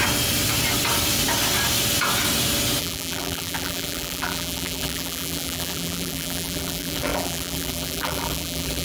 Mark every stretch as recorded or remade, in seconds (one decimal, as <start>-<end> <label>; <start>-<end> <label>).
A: 0.0-2.8 recorded; 2.8-8.8 remade